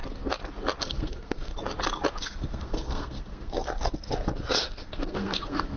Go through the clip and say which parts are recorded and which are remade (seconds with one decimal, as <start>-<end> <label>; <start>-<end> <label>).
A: 0.0-0.8 recorded; 0.8-1.5 remade; 1.5-2.1 recorded; 2.1-3.7 remade; 3.7-4.6 recorded; 4.6-5.8 remade